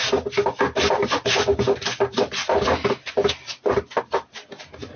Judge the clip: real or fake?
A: real